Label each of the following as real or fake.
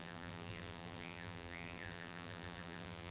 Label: fake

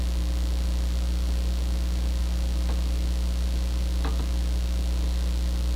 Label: real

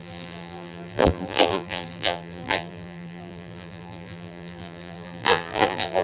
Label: fake